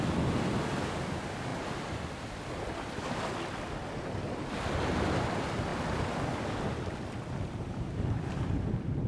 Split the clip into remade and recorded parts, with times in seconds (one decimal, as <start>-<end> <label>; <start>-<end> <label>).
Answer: 0.0-1.5 remade; 1.5-5.2 recorded; 5.2-5.7 remade; 5.7-6.5 recorded; 6.5-9.1 remade